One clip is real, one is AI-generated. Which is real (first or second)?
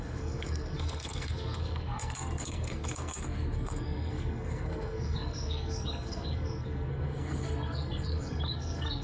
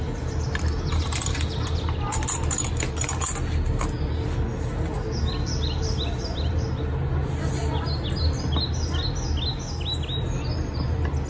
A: second